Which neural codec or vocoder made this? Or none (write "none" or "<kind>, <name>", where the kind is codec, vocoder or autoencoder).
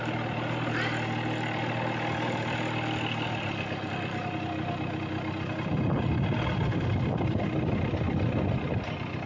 none